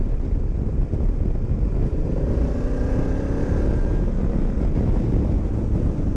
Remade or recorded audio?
recorded